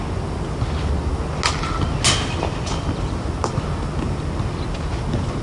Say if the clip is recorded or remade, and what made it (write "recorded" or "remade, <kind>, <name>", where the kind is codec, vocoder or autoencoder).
recorded